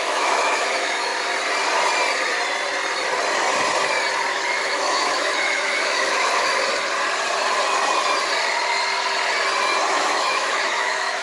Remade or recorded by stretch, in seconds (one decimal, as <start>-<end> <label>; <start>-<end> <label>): 0.0-1.1 remade; 1.1-4.3 recorded; 4.3-6.5 remade; 6.5-9.9 recorded; 9.9-11.2 remade